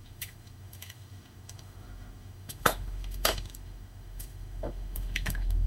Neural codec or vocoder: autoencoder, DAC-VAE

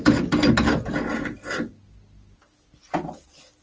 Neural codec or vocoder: none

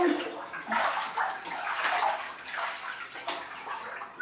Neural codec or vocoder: none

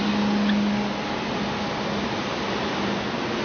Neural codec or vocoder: none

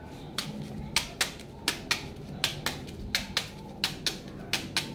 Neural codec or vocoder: none